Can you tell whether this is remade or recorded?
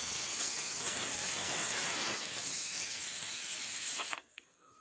remade